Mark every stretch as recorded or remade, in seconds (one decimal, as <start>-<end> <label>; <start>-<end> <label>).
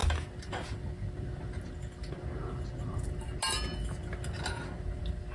0.0-5.3 recorded